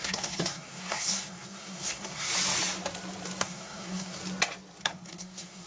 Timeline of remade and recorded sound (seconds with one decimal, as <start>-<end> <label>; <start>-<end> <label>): 0.0-2.3 remade; 2.3-3.4 recorded; 3.4-4.2 remade; 4.2-4.8 recorded; 4.8-5.7 remade